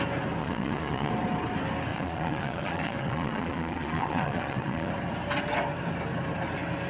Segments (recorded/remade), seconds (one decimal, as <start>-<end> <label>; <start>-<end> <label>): 0.0-0.4 recorded; 0.4-1.1 remade; 1.1-1.9 recorded; 1.9-4.9 remade; 4.9-6.9 recorded